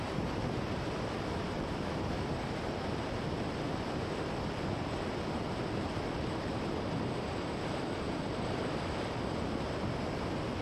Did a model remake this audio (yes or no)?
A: yes